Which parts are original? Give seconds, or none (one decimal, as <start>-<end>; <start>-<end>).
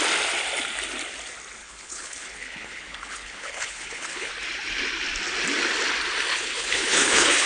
0.0-1.6; 4.3-6.3